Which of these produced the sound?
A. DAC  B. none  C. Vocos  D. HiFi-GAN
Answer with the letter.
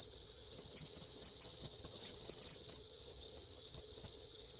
D